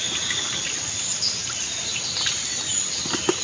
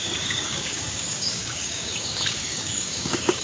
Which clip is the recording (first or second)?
first